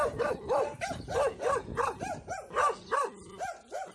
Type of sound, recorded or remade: recorded